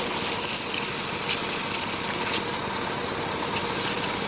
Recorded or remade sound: recorded